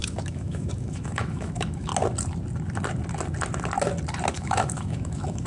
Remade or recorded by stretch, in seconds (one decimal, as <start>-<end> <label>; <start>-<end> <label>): 0.0-1.9 remade; 1.9-4.3 recorded; 4.3-5.5 remade